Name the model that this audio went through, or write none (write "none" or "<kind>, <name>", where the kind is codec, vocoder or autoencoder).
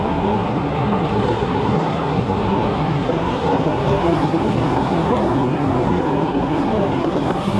codec, SNAC